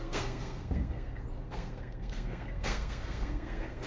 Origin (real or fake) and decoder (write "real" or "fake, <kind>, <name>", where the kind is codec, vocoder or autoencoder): fake, codec, SNAC